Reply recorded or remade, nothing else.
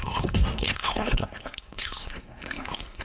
remade